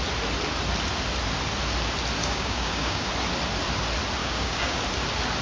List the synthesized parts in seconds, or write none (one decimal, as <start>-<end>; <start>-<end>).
2.2-3.1; 4.2-4.8